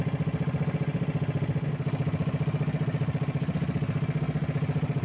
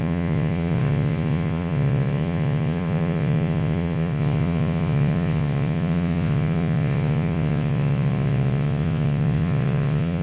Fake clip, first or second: second